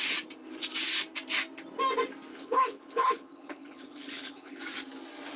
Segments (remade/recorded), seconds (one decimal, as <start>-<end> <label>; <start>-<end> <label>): 0.0-2.3 recorded; 2.3-4.6 remade; 4.6-5.4 recorded